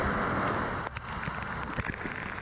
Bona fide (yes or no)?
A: yes